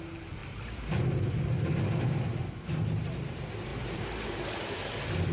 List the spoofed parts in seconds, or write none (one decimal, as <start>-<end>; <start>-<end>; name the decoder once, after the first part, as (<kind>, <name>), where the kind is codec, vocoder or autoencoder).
3.7-4.4 (vocoder, BigVGAN v2)